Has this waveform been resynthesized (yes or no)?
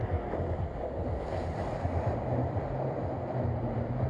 yes